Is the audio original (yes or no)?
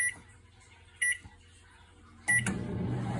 yes